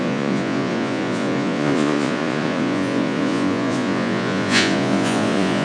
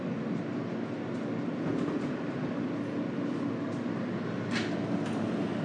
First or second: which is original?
second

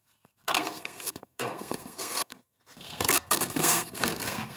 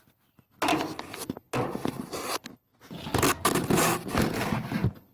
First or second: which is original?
second